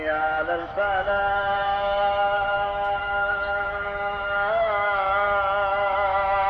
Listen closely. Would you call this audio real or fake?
fake